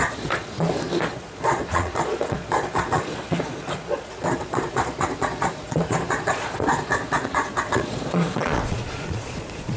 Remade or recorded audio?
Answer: remade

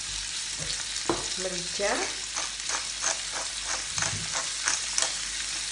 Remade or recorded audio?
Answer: recorded